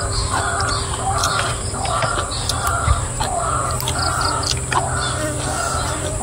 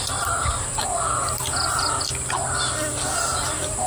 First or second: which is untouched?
first